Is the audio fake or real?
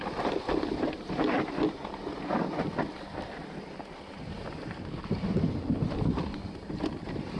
real